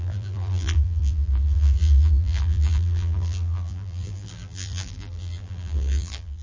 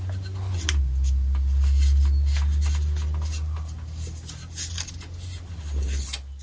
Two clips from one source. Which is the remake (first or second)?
first